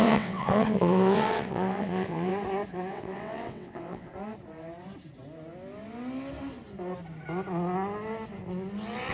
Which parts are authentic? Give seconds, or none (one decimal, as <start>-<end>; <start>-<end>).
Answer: 2.3-2.9; 4.1-9.1